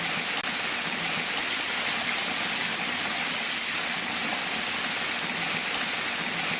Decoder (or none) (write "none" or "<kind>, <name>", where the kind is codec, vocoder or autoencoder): none